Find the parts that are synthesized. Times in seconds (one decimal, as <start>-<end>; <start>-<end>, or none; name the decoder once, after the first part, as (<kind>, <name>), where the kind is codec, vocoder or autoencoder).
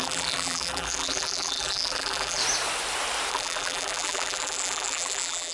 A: 0.0-2.4 (vocoder, BigVGAN v2); 3.3-5.5